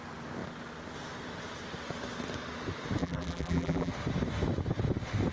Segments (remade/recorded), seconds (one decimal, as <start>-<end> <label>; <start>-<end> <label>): 0.0-3.0 recorded; 3.0-3.9 remade; 3.9-5.3 recorded